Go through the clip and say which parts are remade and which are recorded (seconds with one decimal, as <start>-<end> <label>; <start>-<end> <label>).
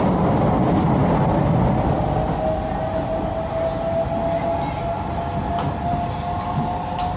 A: 0.0-7.2 recorded